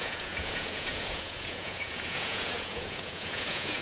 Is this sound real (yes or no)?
no